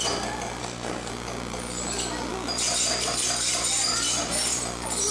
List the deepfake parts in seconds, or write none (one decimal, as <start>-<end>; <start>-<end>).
0.6-1.1